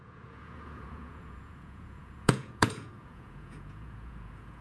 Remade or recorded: remade